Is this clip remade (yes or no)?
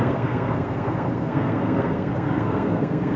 yes